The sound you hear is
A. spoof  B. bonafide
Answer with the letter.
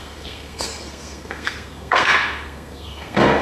A